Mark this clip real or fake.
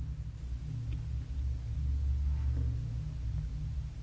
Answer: real